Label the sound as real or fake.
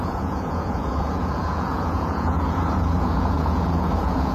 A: fake